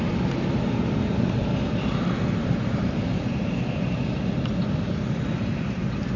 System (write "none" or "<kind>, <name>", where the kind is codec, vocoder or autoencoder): none